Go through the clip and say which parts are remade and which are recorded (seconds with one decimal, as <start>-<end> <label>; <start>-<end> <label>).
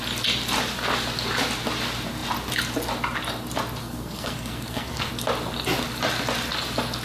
0.0-3.8 recorded; 3.8-5.1 remade; 5.1-7.0 recorded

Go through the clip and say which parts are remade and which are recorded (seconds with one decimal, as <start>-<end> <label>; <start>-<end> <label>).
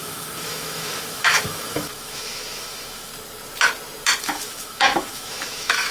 0.0-3.1 remade; 3.1-4.2 recorded; 4.2-5.9 remade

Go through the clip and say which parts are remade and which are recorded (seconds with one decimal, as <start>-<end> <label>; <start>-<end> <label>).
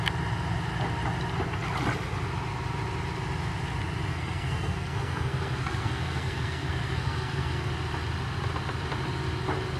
0.0-4.1 recorded; 4.1-7.7 remade; 7.7-9.8 recorded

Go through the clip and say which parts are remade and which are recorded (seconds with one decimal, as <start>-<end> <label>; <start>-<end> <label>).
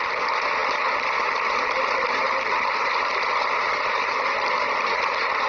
0.0-5.5 recorded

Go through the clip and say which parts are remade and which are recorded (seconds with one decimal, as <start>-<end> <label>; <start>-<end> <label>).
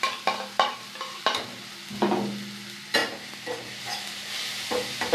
0.0-5.1 recorded